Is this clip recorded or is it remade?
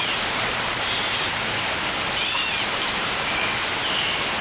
recorded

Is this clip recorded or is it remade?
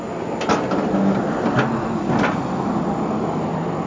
recorded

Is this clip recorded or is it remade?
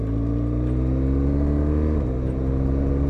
recorded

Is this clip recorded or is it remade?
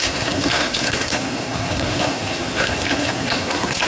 remade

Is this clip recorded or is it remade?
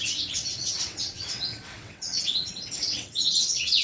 remade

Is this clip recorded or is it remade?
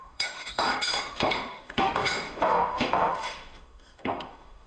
remade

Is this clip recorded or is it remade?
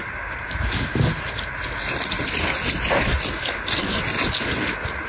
recorded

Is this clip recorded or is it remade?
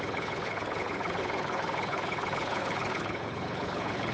remade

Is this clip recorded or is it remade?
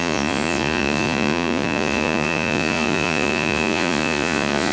remade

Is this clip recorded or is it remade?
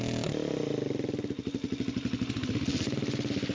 recorded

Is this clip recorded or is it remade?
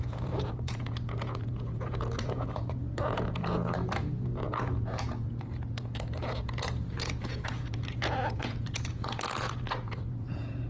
remade